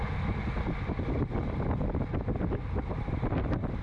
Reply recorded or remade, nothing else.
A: recorded